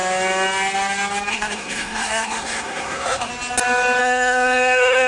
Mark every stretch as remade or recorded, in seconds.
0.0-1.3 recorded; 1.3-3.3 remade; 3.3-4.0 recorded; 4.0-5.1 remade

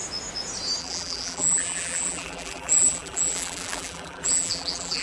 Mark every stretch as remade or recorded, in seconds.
0.0-0.8 recorded; 0.8-5.0 remade

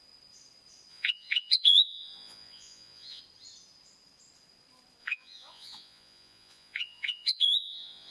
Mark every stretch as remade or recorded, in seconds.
0.0-0.9 recorded; 0.9-3.2 remade; 3.2-5.0 recorded; 5.0-8.1 remade

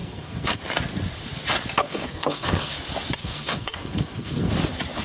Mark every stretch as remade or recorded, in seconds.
0.0-0.6 remade; 0.6-1.8 recorded; 1.8-2.7 remade; 2.7-3.2 recorded; 3.2-4.5 remade; 4.5-5.0 recorded

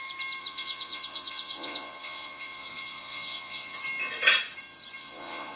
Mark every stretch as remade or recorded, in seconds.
0.0-0.4 recorded; 0.4-3.8 remade; 3.8-5.0 recorded; 5.0-5.6 remade

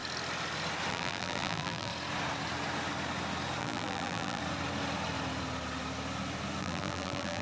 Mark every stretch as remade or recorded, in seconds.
0.0-0.9 recorded; 0.9-1.9 remade; 1.9-3.6 recorded; 3.6-4.4 remade; 4.4-6.6 recorded; 6.6-7.4 remade